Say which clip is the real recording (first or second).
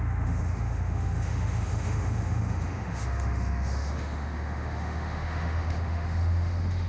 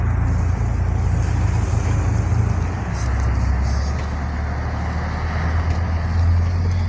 second